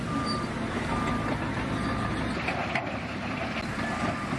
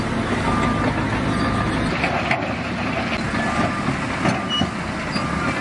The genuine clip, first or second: second